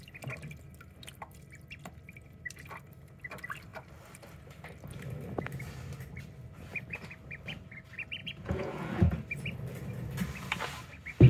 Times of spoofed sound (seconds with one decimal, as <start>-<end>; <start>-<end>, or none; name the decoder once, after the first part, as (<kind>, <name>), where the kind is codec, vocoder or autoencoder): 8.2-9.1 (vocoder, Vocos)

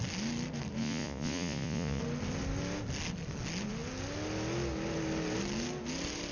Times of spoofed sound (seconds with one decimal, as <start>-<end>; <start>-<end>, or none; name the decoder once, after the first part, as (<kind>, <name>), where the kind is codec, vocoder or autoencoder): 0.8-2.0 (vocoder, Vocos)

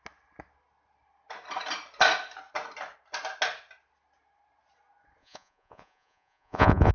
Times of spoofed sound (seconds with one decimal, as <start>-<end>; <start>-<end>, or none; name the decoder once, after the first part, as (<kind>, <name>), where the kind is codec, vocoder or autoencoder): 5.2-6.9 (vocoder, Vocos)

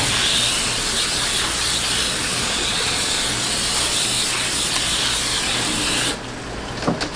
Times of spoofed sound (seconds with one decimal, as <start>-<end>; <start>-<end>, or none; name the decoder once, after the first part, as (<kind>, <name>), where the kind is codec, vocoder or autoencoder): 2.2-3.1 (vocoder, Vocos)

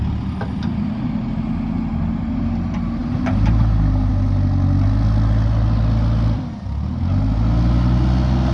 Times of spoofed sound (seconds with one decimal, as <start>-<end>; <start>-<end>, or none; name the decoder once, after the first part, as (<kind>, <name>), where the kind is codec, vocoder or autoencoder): none